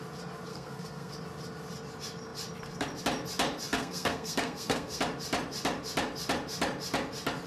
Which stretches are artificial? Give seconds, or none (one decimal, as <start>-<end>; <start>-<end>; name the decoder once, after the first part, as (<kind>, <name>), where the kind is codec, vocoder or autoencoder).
0.5-1.1 (codec, SNAC); 3.7-5.0